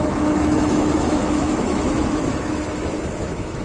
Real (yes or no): no